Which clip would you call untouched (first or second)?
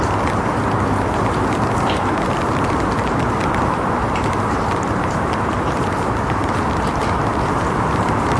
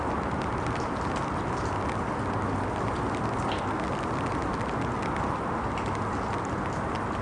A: second